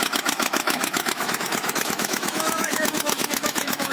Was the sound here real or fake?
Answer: fake